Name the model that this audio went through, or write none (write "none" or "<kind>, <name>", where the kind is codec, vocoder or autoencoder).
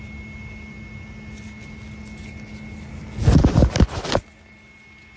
none